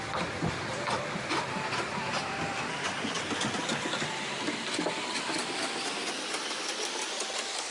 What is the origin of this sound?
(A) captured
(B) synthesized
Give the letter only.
A